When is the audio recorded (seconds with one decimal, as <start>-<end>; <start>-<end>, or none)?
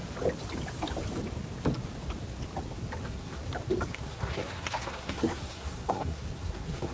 0.0-3.0; 3.4-3.9